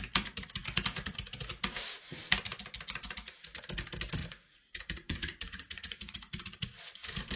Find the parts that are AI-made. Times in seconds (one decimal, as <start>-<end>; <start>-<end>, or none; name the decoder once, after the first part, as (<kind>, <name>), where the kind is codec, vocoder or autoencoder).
4.2-6.8 (vocoder, Vocos)